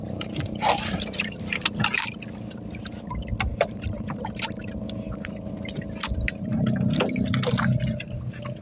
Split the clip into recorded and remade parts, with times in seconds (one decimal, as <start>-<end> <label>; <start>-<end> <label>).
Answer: 0.0-1.4 remade; 1.4-3.5 recorded; 3.5-4.7 remade; 4.7-8.6 recorded